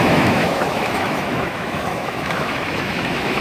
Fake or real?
fake